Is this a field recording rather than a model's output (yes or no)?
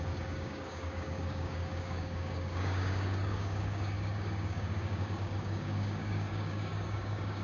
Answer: no